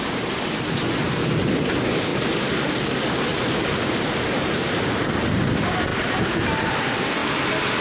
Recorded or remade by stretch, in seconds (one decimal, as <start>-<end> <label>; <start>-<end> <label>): 0.0-3.3 recorded; 3.3-5.4 remade; 5.4-5.9 recorded; 5.9-6.7 remade; 6.7-7.8 recorded